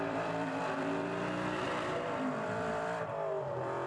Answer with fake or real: fake